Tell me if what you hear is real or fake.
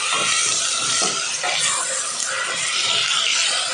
real